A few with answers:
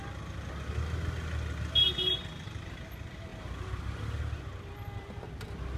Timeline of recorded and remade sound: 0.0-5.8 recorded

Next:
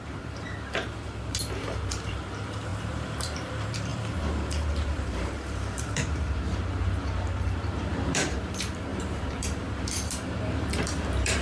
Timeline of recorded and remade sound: 0.0-11.4 remade

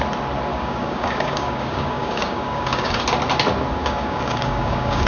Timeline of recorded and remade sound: 0.0-0.5 recorded; 0.5-3.0 remade; 3.0-3.8 recorded; 3.8-5.1 remade

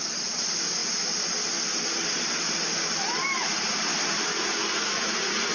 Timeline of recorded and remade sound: 0.0-5.5 recorded

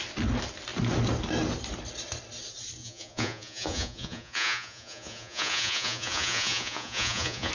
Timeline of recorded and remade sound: 0.0-2.8 recorded; 2.8-7.5 remade

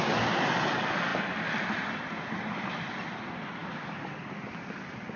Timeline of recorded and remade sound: 0.0-5.2 recorded

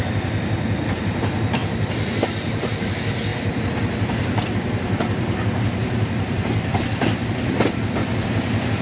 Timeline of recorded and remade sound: 0.0-3.3 recorded; 3.3-8.0 remade; 8.0-8.8 recorded